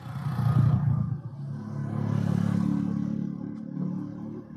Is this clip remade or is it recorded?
recorded